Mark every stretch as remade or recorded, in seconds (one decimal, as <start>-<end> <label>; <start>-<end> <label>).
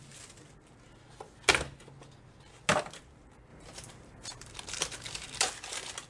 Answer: 0.0-3.5 recorded; 3.5-5.4 remade; 5.4-6.1 recorded